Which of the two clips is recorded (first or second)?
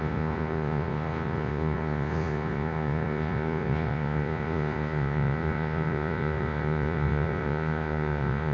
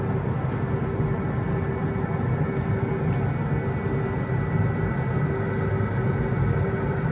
second